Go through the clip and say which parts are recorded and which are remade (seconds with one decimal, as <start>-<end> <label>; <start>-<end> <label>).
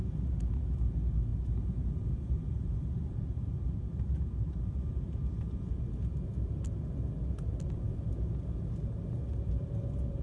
0.0-1.3 recorded; 1.3-5.8 remade; 5.8-10.2 recorded